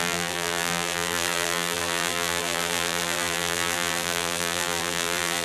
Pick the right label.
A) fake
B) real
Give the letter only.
A